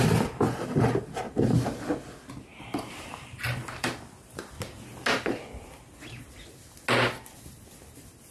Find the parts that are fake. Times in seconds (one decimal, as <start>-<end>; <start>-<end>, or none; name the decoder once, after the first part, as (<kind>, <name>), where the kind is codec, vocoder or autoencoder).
2.5-4.4 (vocoder, BigVGAN v2)